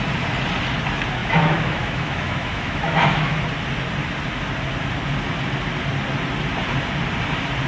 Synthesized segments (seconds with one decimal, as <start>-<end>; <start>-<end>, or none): 1.2-3.4